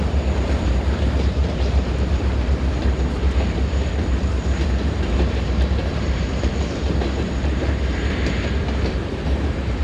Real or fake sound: fake